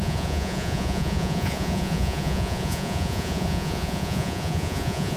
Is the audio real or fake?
fake